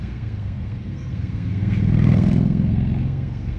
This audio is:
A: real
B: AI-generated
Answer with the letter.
B